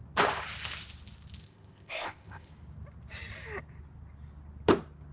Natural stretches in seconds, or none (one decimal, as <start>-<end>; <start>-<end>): 0.0-1.4; 2.5-5.1